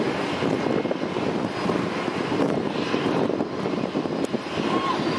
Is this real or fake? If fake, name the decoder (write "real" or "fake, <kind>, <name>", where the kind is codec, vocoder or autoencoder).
real